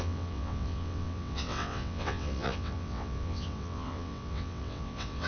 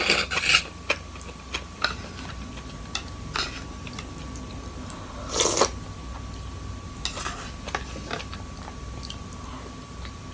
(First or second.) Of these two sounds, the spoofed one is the first